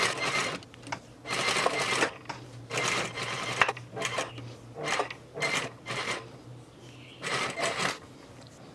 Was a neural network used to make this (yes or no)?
no